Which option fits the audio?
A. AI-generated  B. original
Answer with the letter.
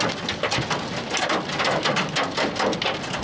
B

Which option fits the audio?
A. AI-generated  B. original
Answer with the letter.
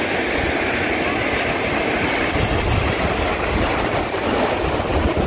B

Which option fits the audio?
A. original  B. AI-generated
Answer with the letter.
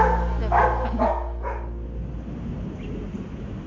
A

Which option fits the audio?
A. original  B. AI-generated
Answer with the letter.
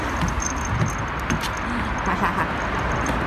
A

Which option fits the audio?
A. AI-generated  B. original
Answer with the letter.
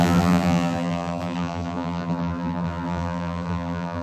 A